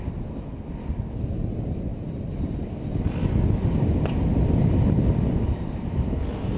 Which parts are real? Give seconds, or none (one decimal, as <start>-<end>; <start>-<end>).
0.0-6.6